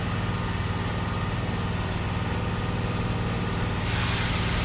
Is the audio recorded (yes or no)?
yes